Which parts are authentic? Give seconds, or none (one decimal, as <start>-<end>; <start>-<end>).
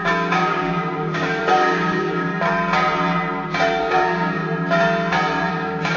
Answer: 2.3-3.8; 4.4-5.5